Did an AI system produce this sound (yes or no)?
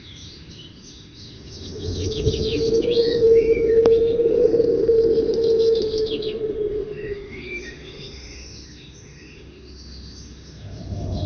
yes